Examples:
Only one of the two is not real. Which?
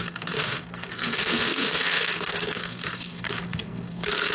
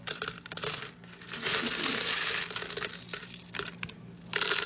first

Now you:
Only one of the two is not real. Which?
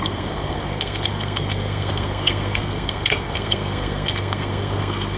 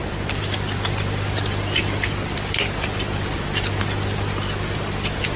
first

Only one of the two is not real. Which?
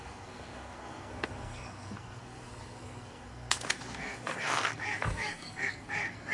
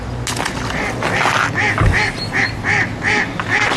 first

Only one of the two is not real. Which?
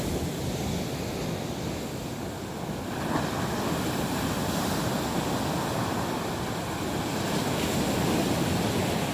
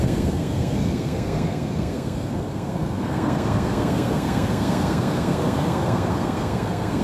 second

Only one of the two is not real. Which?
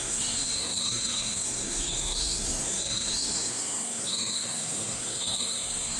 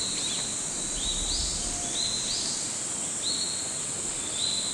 first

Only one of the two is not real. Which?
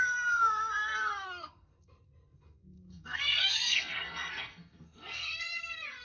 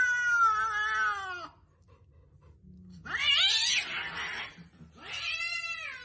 first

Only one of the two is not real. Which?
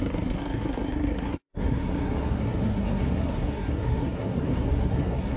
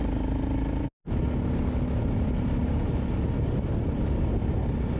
first